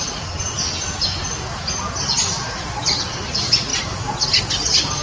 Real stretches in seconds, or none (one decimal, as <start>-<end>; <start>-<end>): 0.0-5.0